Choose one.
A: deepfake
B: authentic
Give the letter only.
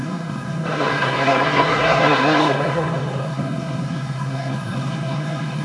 A